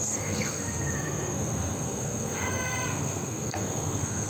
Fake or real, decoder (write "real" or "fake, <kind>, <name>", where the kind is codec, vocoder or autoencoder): fake, codec, SNAC